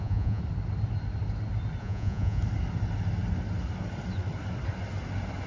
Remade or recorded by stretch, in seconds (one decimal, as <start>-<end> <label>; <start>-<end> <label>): 0.0-0.4 remade; 0.4-1.8 recorded; 1.8-2.4 remade; 2.4-5.5 recorded